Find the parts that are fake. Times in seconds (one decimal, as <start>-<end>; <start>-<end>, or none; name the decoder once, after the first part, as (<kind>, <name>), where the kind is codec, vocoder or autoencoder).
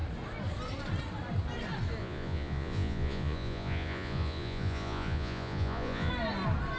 2.0-6.1 (vocoder, Vocos)